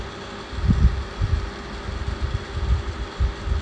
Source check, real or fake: real